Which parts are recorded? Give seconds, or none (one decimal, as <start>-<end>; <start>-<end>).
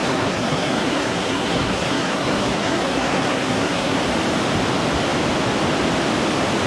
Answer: 4.0-6.7